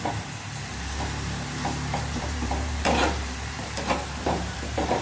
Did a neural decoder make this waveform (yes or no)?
yes